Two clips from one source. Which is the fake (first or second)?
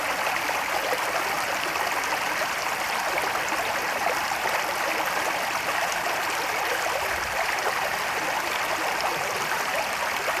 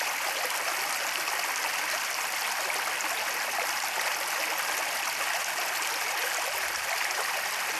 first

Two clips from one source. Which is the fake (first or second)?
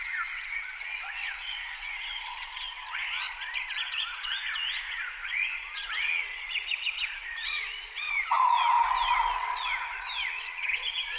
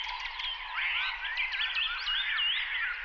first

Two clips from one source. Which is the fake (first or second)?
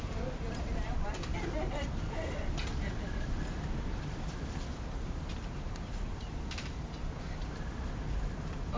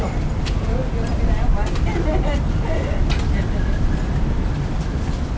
first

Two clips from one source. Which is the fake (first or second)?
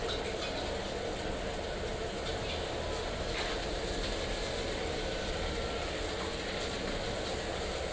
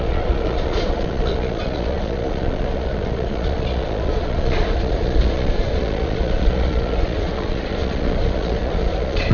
second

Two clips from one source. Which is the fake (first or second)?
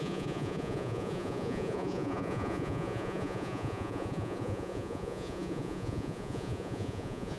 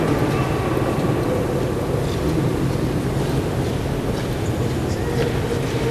first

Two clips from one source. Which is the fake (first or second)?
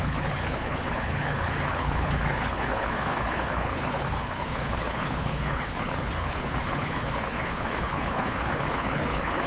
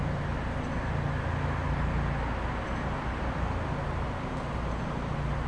first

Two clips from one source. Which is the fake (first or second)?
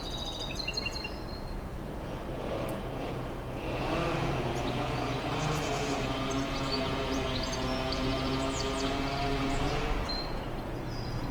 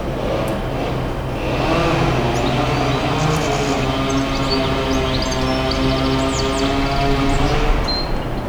first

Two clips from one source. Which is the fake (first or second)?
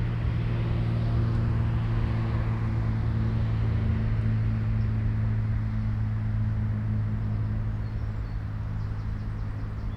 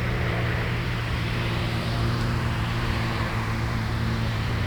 second